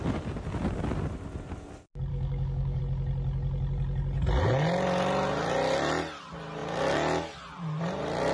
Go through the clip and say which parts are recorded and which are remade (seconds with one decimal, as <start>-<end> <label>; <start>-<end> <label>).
0.0-2.1 recorded; 2.1-2.8 remade; 2.8-8.3 recorded